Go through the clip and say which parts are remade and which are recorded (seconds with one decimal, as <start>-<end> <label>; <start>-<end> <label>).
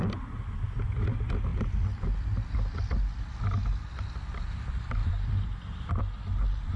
0.0-5.0 recorded; 5.0-6.0 remade; 6.0-6.8 recorded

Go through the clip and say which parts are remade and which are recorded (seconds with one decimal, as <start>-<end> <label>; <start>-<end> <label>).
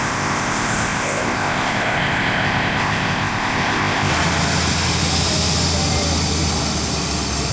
0.0-4.1 remade; 4.1-7.5 recorded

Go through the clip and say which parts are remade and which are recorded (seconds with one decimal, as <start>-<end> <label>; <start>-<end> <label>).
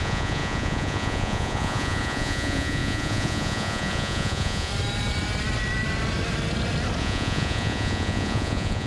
0.0-4.7 remade; 4.7-7.0 recorded; 7.0-8.9 remade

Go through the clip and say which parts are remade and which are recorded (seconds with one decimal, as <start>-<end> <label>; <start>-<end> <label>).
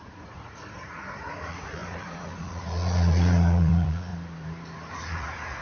0.0-4.1 remade; 4.1-4.9 recorded; 4.9-5.6 remade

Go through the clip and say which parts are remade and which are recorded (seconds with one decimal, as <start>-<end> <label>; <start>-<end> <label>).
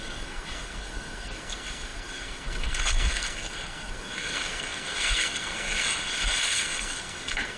0.0-7.6 remade